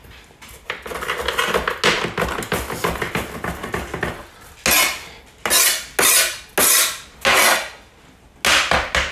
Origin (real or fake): real